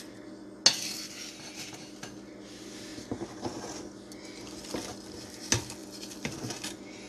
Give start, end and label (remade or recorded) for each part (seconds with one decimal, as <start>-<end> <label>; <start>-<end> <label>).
0.0-7.1 recorded